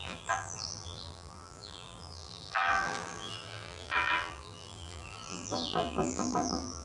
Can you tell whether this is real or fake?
fake